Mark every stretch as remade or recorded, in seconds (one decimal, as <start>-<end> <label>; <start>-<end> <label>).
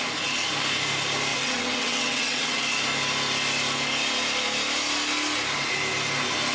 0.0-1.3 recorded; 1.3-2.6 remade; 2.6-6.5 recorded